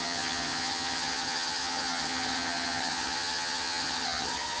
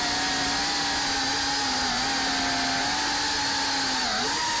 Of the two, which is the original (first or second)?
second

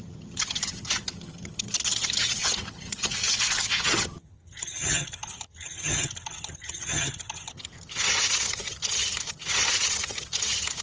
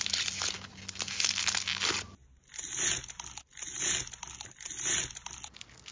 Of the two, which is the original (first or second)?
second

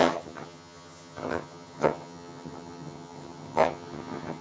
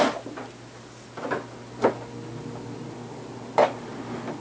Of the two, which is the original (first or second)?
second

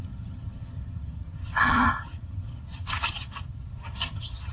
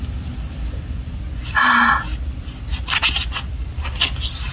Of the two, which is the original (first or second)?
second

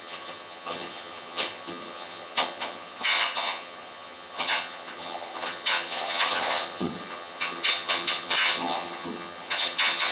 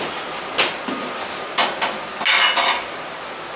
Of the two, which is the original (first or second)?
second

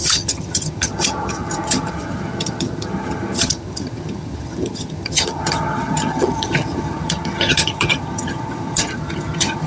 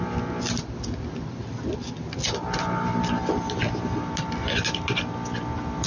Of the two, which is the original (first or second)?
second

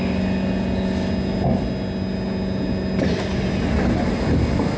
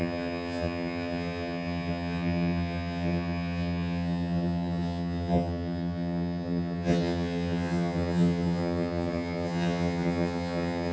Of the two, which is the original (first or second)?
first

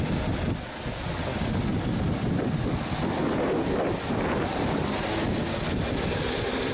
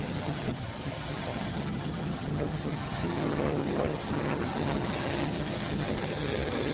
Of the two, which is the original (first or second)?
first